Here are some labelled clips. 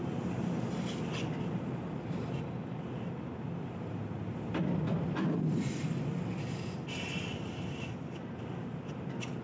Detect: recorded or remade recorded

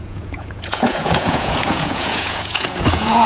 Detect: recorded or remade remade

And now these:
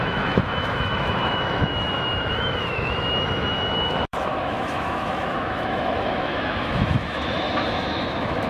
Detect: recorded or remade remade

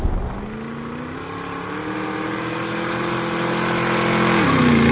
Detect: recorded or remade recorded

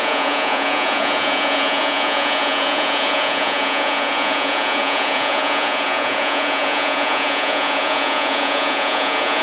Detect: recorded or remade remade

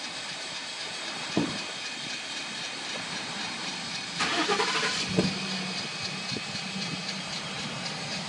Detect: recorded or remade remade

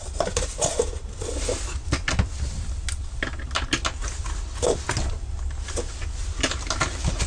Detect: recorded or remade recorded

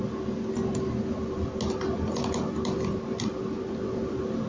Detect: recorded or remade recorded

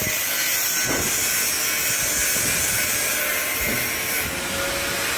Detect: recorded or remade recorded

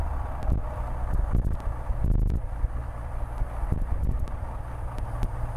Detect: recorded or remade recorded